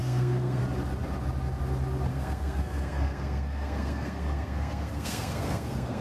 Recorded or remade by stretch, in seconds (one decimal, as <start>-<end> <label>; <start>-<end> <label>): 0.0-0.6 remade; 0.6-2.1 recorded; 2.1-6.0 remade